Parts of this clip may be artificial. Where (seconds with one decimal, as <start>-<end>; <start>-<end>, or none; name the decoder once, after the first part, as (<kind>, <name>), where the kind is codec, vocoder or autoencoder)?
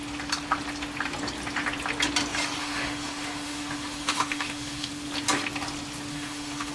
2.6-4.9 (autoencoder, DAC-VAE); 6.1-6.7